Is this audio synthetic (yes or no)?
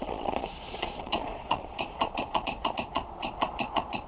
yes